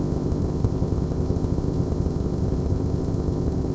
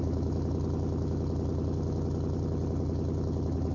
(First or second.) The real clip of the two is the second